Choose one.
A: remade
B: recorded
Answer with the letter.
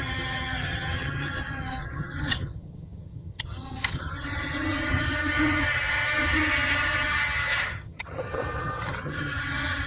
A